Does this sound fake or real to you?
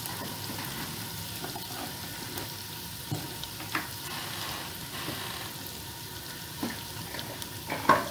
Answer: real